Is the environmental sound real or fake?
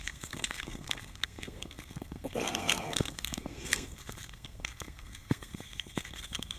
fake